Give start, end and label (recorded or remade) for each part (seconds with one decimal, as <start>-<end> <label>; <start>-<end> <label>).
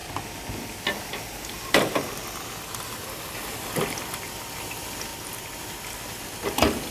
0.0-5.1 recorded; 5.1-5.8 remade; 5.8-6.9 recorded